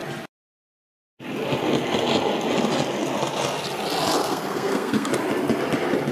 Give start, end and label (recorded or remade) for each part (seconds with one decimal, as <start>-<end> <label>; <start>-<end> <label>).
0.0-4.2 recorded; 4.2-5.1 remade; 5.1-6.1 recorded